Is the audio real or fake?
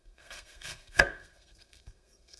fake